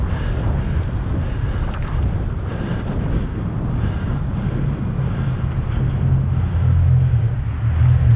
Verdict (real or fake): real